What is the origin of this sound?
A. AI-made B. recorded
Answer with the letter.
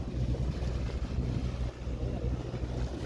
B